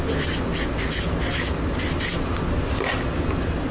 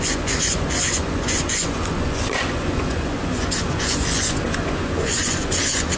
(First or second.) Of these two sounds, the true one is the first